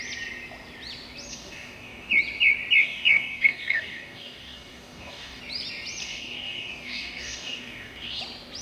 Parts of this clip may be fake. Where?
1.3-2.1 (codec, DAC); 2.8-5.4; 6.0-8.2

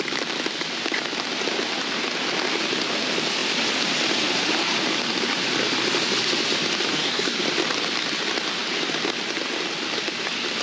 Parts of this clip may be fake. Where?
6.9-7.4 (codec, DAC)

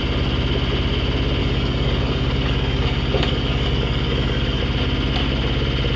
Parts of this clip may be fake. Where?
1.4-4.6 (codec, DAC)

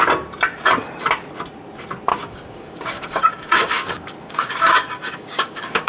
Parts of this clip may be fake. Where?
2.1-5.9 (codec, DAC)